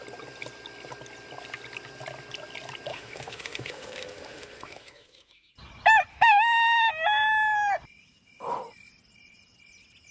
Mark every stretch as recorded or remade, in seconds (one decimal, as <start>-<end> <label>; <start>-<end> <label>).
0.0-2.9 recorded; 2.9-5.5 remade; 5.5-6.1 recorded; 6.1-6.9 remade; 6.9-10.1 recorded